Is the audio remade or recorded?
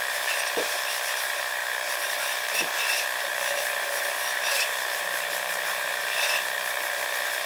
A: remade